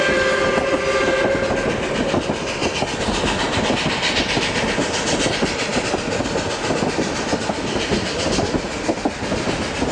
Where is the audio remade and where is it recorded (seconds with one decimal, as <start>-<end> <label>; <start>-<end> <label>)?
0.0-9.9 recorded